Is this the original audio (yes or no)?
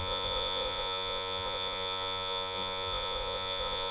no